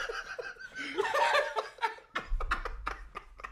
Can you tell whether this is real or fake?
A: real